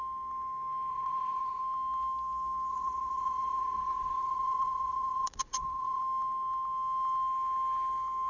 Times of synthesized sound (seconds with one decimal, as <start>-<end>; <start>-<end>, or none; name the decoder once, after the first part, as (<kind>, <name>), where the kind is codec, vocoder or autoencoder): 0.9-1.6 (vocoder, WaveNeXt); 2.7-6.0